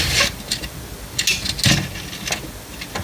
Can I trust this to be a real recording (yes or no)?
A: yes